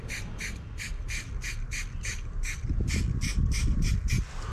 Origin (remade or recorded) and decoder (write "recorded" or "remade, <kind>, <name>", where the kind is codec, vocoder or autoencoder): recorded